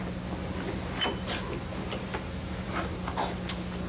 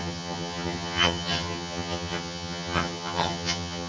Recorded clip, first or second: first